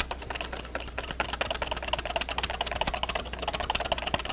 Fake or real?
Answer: real